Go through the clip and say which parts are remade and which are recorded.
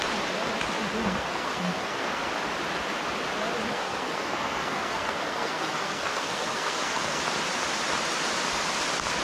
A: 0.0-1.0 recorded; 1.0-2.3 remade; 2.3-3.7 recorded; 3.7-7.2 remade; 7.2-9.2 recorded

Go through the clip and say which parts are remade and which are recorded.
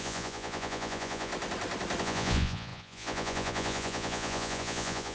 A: 0.0-1.3 remade; 1.3-2.0 recorded; 2.0-5.1 remade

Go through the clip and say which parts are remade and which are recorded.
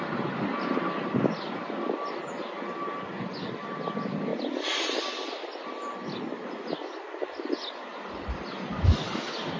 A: 0.0-9.6 recorded